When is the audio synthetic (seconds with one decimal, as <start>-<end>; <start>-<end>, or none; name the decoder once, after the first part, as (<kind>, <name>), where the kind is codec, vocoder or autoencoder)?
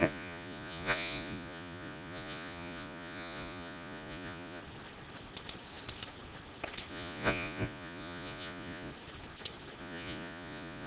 0.0-4.6 (vocoder, Vocos); 6.9-8.9; 9.8-10.9